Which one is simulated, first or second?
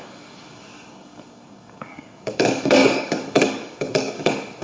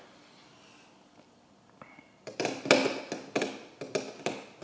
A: first